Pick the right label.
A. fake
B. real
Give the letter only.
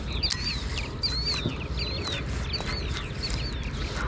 B